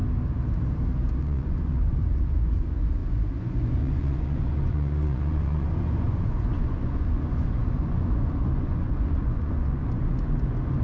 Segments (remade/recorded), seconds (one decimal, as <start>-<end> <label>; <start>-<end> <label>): 0.0-1.2 recorded; 1.2-10.8 remade